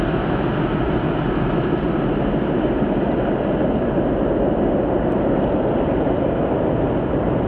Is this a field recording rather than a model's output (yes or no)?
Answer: yes